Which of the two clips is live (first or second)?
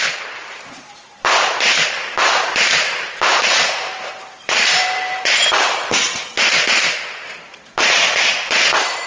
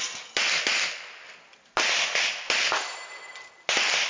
second